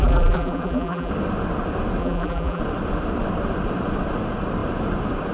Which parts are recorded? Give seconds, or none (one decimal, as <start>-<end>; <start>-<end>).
1.1-2.0; 2.6-5.3